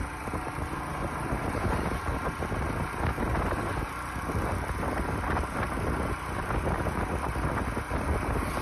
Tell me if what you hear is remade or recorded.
recorded